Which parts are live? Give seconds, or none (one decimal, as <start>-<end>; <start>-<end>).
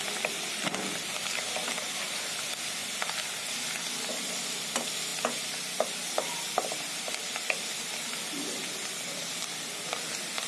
2.8-4.1; 5.1-6.1